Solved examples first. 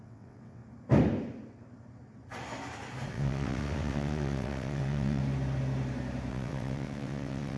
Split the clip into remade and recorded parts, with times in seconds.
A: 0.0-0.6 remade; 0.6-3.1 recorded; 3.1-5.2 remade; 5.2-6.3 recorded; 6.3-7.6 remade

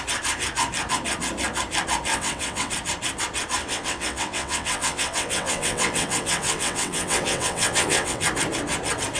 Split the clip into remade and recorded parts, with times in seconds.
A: 0.0-2.1 recorded; 2.1-2.7 remade; 2.7-3.6 recorded; 3.6-8.2 remade; 8.2-9.2 recorded

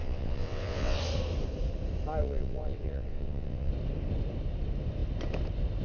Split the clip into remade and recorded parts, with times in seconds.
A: 0.0-1.0 remade; 1.0-2.2 recorded; 2.2-3.7 remade; 3.7-5.8 recorded